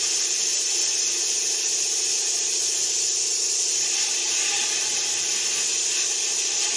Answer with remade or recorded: recorded